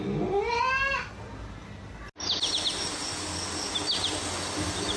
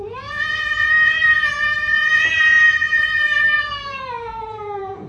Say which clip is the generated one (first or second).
second